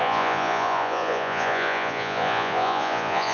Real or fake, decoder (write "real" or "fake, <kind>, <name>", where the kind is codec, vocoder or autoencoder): fake, vocoder, Vocos